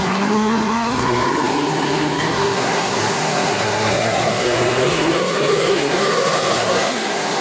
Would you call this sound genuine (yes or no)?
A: no